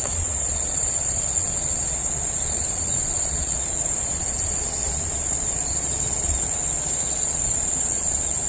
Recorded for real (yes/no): no